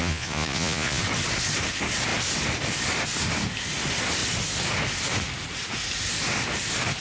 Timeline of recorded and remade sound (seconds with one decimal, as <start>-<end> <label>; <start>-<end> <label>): 0.0-1.0 remade; 1.0-7.0 recorded